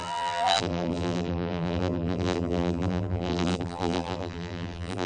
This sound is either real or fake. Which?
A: fake